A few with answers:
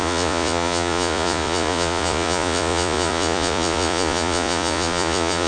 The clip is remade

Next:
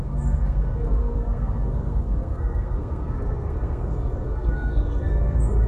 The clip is remade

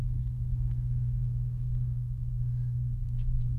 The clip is remade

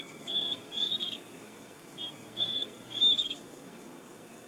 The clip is remade